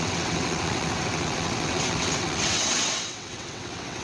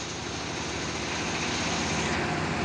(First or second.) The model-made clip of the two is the first